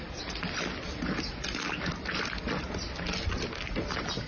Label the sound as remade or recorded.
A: recorded